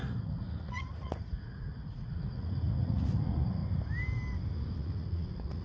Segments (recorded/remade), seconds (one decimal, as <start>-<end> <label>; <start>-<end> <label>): 0.0-3.6 remade; 3.6-4.7 recorded; 4.7-5.6 remade